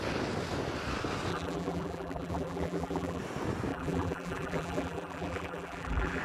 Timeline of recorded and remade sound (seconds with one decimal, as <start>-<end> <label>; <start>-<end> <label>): 0.0-1.3 recorded; 1.3-3.2 remade; 3.2-3.7 recorded; 3.7-6.2 remade